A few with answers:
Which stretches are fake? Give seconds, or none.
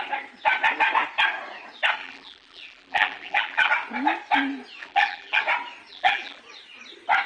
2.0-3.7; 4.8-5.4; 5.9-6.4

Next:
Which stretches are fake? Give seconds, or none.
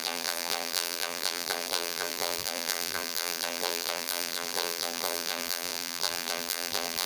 0.0-7.1